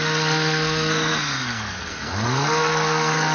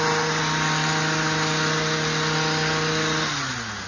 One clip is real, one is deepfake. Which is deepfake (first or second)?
first